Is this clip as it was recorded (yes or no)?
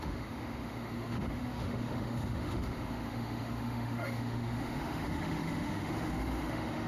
no